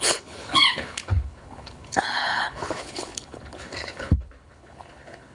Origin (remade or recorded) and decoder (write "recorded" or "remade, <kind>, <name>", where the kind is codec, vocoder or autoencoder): remade, codec, HILCodec